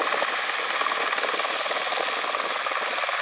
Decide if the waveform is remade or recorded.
recorded